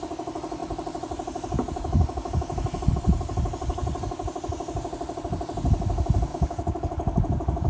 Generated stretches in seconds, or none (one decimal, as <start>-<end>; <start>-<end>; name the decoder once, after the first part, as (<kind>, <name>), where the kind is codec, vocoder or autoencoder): 6.3-7.7 (codec, DAC)